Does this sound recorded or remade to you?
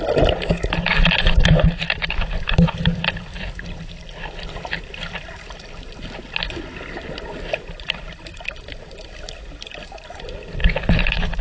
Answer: recorded